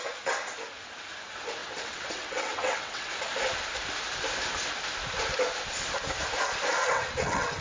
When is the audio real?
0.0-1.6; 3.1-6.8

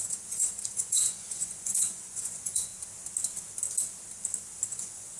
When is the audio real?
2.7-4.7

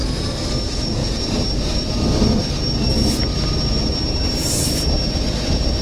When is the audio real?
none

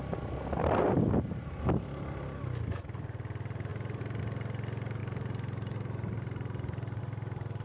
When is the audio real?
0.0-5.0; 7.0-7.6